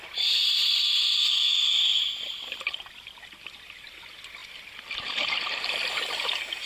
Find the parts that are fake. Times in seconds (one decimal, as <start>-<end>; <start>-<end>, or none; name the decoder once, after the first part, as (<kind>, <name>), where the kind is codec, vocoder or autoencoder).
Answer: none